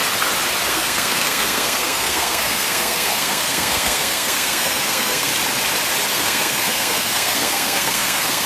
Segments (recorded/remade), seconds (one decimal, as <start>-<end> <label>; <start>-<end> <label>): 0.0-0.7 recorded; 0.7-5.3 remade; 5.3-6.1 recorded; 6.1-8.5 remade